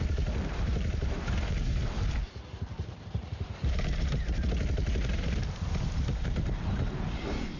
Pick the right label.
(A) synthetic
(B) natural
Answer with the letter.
A